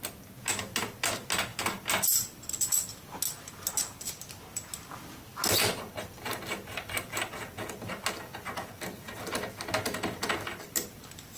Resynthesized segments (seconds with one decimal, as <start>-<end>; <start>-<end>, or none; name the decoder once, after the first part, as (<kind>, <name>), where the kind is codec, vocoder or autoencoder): none